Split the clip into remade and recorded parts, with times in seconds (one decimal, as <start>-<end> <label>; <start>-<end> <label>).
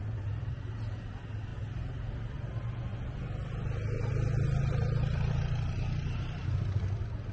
0.0-7.3 recorded